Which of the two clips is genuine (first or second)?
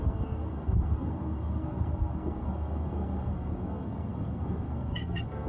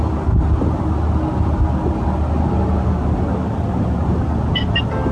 second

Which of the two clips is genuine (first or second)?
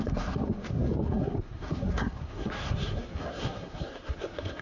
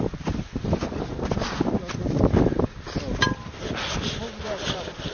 second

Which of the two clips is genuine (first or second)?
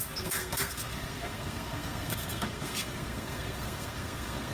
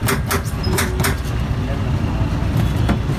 second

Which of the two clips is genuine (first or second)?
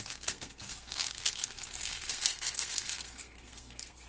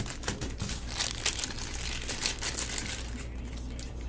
second